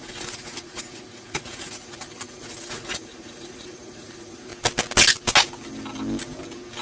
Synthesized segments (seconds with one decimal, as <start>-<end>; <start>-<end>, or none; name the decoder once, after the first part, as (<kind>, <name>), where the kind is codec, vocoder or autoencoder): 0.0-4.5 (vocoder, Vocos)